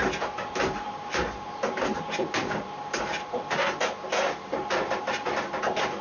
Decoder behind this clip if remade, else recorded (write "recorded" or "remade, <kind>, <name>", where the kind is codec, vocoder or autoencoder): recorded